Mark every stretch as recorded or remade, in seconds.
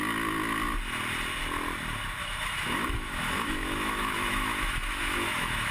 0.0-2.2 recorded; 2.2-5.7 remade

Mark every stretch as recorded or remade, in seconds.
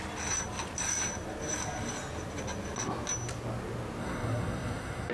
0.0-4.0 recorded; 4.0-5.1 remade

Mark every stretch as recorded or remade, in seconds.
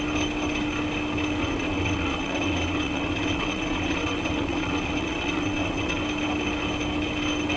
0.0-1.4 recorded; 1.4-6.0 remade; 6.0-7.6 recorded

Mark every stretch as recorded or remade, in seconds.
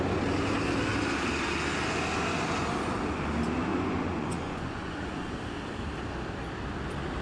0.0-3.7 recorded; 3.7-5.3 remade; 5.3-7.2 recorded